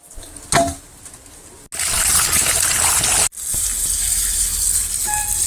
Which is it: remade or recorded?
recorded